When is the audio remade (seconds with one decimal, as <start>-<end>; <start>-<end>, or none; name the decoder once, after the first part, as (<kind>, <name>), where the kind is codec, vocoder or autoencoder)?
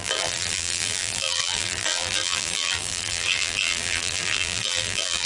0.0-5.3 (vocoder, BigVGAN v2)